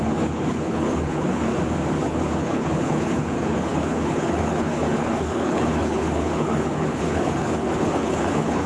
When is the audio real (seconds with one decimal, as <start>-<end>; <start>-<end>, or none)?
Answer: 1.5-2.0